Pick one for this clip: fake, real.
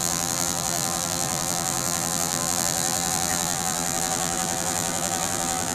fake